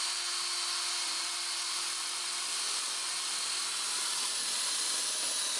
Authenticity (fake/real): real